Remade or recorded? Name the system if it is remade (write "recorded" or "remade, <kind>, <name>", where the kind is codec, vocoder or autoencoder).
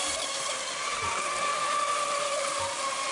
remade, vocoder, BigVGAN v2